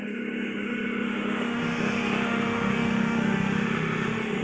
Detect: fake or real fake